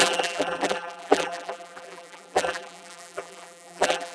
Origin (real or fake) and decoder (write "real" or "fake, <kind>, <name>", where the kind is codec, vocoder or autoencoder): fake, vocoder, BigVGAN v2